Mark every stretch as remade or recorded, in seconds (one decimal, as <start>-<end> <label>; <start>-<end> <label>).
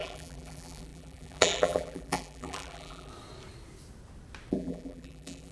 0.0-3.1 remade; 3.1-4.5 recorded; 4.5-5.5 remade